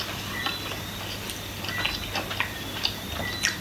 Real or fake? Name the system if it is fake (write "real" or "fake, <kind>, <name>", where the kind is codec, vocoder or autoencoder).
real